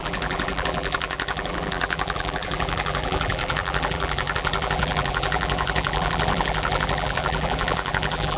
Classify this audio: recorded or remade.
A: remade